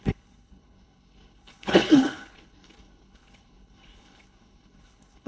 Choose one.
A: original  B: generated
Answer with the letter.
B